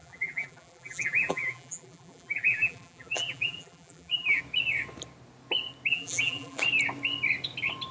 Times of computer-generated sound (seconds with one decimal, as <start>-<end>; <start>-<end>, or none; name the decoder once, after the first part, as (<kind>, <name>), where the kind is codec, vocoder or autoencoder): 0.0-4.4 (vocoder, BigVGAN v2); 5.9-6.6

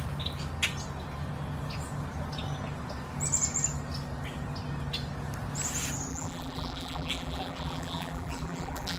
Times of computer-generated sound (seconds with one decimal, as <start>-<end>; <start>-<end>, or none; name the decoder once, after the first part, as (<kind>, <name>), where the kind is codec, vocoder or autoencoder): 6.1-9.0 (vocoder, BigVGAN v2)

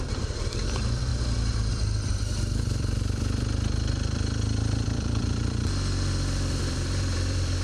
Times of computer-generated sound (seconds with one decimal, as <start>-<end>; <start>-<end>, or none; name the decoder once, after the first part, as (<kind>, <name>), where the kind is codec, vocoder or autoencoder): 0.0-1.1 (vocoder, BigVGAN v2); 1.7-7.6

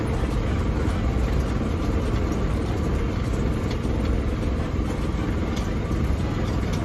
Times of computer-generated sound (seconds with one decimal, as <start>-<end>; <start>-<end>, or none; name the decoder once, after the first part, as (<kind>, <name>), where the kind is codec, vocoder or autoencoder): 2.6-6.8 (vocoder, BigVGAN v2)

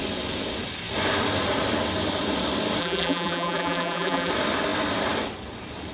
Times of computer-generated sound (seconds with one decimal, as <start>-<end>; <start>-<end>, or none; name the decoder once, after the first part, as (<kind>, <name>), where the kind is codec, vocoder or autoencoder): 2.8-4.3 (vocoder, BigVGAN v2)

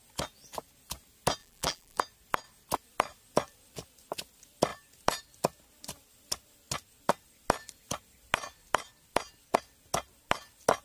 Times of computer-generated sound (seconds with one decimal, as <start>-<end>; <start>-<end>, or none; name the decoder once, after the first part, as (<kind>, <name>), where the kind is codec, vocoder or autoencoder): 1.4-2.0 (vocoder, BigVGAN v2)